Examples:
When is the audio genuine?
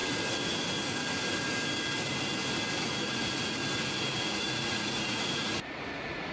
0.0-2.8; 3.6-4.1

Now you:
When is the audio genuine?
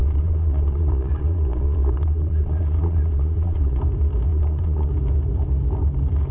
3.8-4.3; 4.9-6.3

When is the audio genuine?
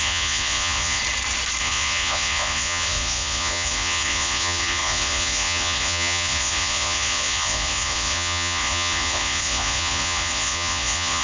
1.0-1.6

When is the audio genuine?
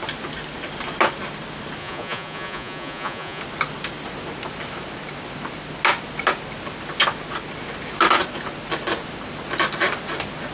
0.0-1.8; 3.4-10.5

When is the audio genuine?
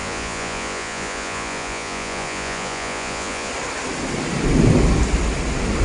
3.5-5.8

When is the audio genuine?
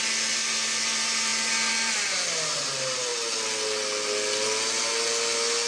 0.0-5.7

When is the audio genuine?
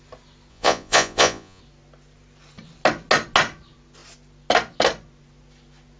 0.0-0.5; 1.6-6.0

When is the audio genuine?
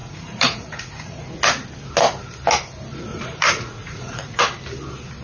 1.3-3.1; 4.4-5.2